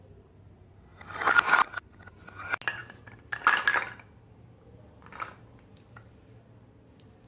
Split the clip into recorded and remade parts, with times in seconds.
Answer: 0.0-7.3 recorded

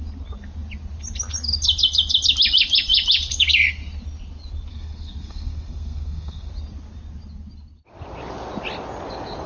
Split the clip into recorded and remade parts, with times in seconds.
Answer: 0.0-4.7 recorded; 4.7-6.5 remade; 6.5-9.5 recorded

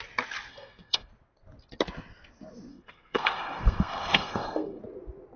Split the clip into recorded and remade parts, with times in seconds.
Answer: 0.0-0.5 recorded; 0.5-1.1 remade; 1.1-2.7 recorded; 2.7-4.8 remade; 4.8-5.4 recorded

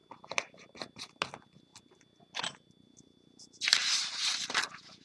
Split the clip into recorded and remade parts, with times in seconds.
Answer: 0.0-5.0 recorded

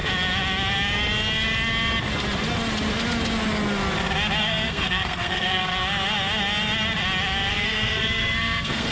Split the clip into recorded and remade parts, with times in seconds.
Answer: 0.0-4.4 recorded; 4.4-5.7 remade; 5.7-7.5 recorded; 7.5-8.9 remade